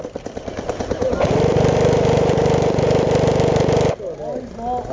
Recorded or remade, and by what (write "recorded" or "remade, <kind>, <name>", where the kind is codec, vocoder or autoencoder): recorded